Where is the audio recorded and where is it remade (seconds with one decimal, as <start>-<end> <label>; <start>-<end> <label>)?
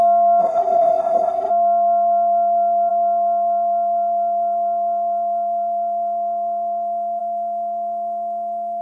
0.0-0.4 recorded; 0.4-1.5 remade; 1.5-8.8 recorded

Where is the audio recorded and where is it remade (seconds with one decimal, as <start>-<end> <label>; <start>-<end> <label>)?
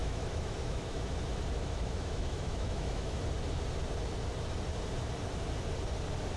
0.0-1.1 remade; 1.1-1.6 recorded; 1.6-3.2 remade; 3.2-6.4 recorded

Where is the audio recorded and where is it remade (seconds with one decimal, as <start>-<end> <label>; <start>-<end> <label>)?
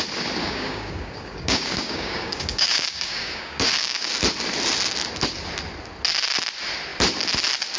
0.0-0.4 recorded; 0.4-4.1 remade; 4.1-7.8 recorded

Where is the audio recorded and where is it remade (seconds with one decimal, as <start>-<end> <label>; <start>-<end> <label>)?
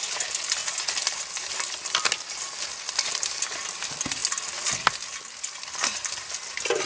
0.0-6.9 recorded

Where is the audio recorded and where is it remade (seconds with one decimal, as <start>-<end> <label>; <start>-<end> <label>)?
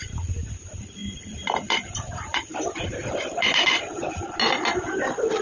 0.0-1.0 recorded; 1.0-4.1 remade; 4.1-5.4 recorded